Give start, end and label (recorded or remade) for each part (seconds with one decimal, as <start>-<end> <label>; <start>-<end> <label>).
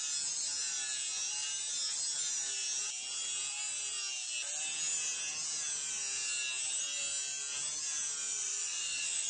0.0-8.3 recorded; 8.3-9.3 remade